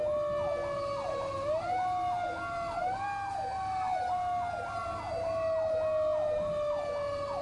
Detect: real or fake real